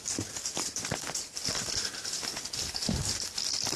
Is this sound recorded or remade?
recorded